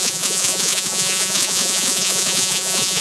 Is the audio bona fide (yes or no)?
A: no